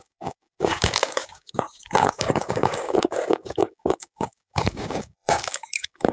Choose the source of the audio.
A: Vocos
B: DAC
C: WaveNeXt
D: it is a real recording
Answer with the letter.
B